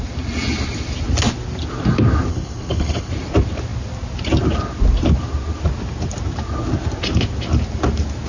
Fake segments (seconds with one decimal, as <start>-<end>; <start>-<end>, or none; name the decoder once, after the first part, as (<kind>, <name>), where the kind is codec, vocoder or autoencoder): 2.3-3.1 (codec, HILCodec)